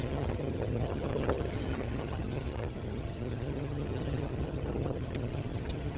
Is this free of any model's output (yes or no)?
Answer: no